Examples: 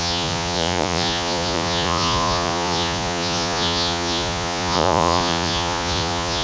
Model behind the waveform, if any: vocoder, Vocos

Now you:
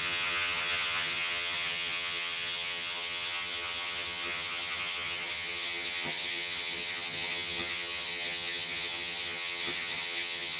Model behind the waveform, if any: vocoder, HiFi-GAN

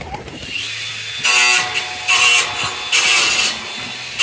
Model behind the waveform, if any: none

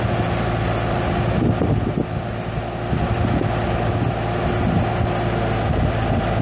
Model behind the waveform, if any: none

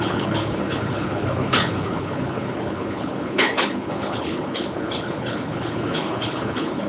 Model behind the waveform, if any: codec, HILCodec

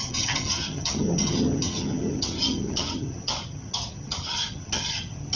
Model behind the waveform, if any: vocoder, HiFi-GAN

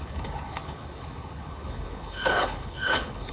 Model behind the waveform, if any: codec, HILCodec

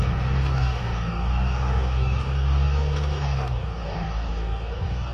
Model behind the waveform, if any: codec, DAC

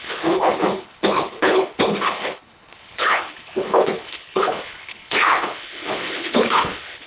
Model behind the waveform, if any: codec, HILCodec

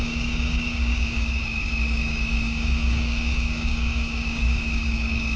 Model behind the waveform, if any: codec, DAC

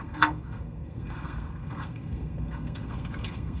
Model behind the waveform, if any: codec, SNAC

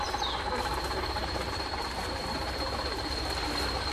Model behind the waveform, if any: vocoder, BigVGAN v2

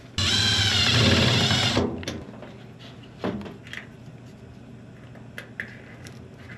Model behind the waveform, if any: none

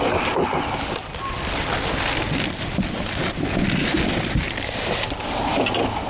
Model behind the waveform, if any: none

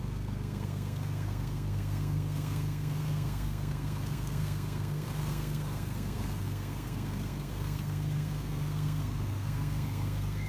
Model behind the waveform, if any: codec, SNAC